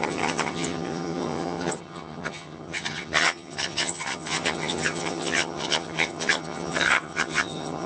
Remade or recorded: remade